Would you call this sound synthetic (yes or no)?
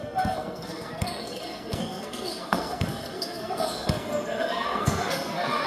yes